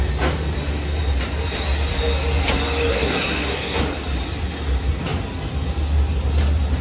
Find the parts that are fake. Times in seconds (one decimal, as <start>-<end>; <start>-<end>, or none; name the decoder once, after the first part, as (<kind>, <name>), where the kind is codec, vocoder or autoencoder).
2.9-3.8 (codec, SNAC)